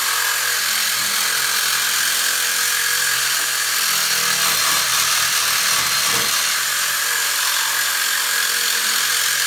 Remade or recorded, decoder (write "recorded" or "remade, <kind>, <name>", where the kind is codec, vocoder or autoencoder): recorded